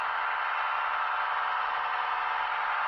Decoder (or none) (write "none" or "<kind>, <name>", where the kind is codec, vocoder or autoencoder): none